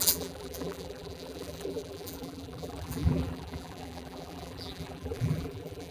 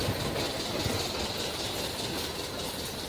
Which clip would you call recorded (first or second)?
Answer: second